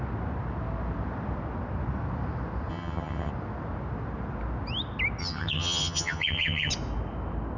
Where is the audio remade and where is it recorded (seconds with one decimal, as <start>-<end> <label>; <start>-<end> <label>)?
0.0-2.7 recorded; 2.7-3.3 remade; 3.3-5.2 recorded; 5.2-6.7 remade; 6.7-7.6 recorded